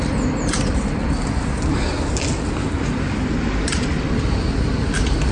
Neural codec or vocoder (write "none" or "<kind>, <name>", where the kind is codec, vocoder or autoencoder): none